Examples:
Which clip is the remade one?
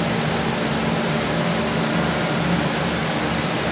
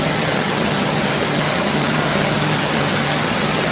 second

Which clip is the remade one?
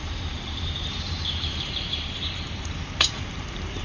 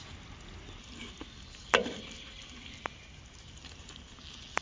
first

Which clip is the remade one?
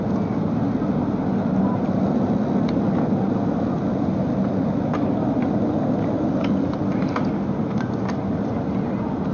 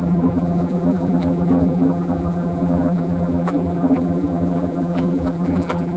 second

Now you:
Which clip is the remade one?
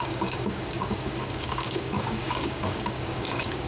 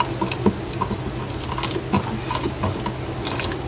first